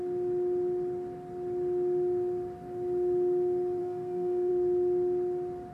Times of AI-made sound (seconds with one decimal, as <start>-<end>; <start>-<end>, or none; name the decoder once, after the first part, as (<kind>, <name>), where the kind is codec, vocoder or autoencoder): 3.8-4.5 (codec, SNAC)